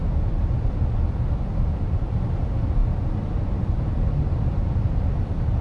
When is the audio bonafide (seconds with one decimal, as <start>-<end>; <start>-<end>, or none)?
0.0-5.6